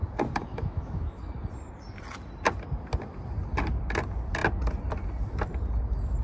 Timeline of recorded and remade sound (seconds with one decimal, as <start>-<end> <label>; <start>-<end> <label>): 0.0-0.4 recorded; 0.4-1.2 remade; 1.2-6.2 recorded